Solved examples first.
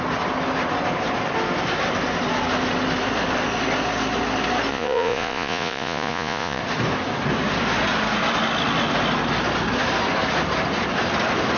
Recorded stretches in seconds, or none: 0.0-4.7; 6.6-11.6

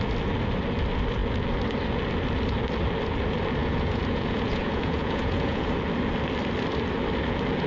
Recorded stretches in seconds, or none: 0.0-3.6; 5.7-7.7

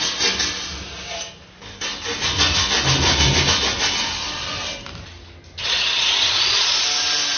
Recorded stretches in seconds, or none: 0.0-5.6; 6.7-7.4

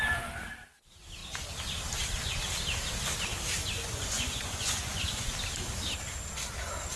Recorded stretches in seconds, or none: 0.0-3.6; 5.3-7.0

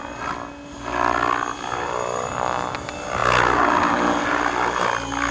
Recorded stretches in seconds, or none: 0.0-5.3